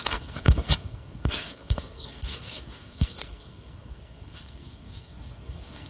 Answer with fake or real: fake